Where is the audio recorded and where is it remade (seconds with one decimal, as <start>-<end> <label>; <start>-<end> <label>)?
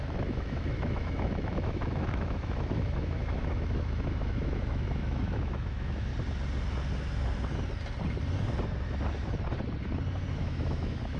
0.0-6.1 remade; 6.1-10.3 recorded; 10.3-11.2 remade